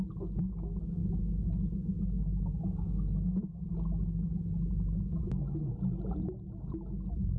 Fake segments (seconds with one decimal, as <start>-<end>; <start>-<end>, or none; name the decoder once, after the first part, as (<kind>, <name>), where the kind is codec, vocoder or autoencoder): none